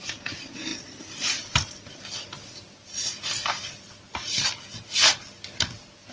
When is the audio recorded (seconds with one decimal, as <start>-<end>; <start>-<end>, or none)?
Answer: 0.0-6.1